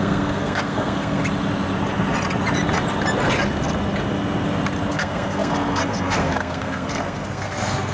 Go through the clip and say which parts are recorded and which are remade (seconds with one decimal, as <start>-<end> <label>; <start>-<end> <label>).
0.0-1.2 remade; 1.2-4.9 recorded; 4.9-7.9 remade